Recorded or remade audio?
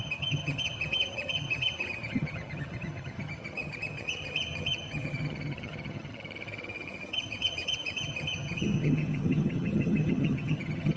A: remade